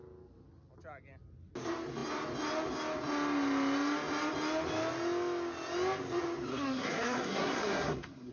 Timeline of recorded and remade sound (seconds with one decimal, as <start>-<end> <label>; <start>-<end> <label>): 0.0-6.5 recorded; 6.5-8.3 remade